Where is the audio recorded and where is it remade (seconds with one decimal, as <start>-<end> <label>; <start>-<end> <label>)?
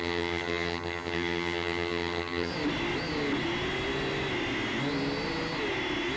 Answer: 0.0-2.5 remade; 2.5-6.2 recorded